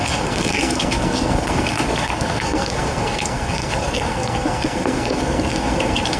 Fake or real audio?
fake